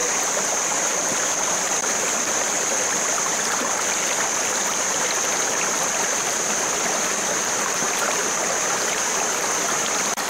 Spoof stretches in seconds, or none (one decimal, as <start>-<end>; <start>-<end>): 0.9-5.3